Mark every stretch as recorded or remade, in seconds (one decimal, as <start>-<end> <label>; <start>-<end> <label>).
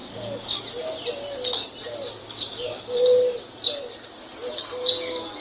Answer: 0.0-0.6 remade; 0.6-2.2 recorded; 2.2-2.8 remade; 2.8-5.4 recorded